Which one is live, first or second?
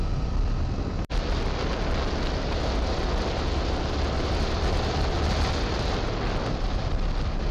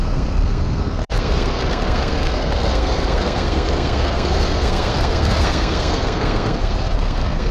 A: first